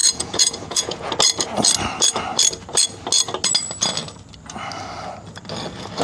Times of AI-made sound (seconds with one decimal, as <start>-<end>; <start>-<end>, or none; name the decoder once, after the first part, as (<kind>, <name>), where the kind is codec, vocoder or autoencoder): 0.0-1.1 (vocoder, Vocos)